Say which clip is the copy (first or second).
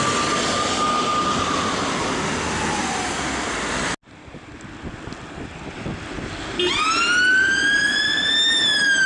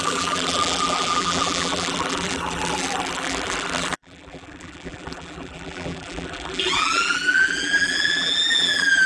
second